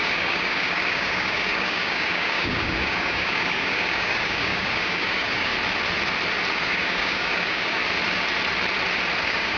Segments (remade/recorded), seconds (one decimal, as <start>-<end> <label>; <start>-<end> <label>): 0.0-5.5 remade; 5.5-6.6 recorded; 6.6-7.8 remade; 7.8-9.2 recorded; 9.2-9.6 remade